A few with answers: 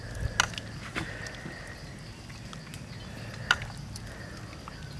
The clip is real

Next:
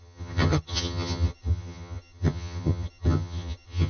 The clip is fake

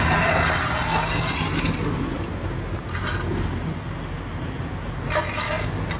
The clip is real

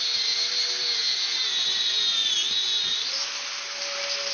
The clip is real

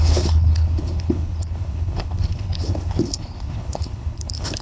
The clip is fake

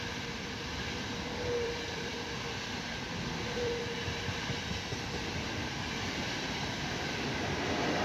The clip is fake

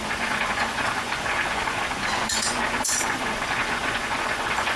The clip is fake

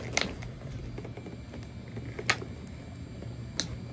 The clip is real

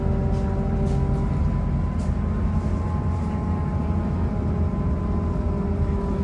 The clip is real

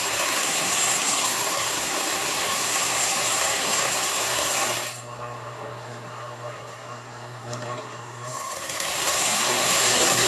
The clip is fake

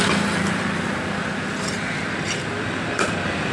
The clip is real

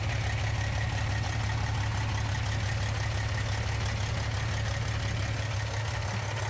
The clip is real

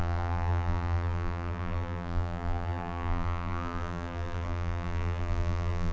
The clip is fake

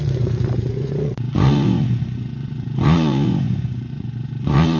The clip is fake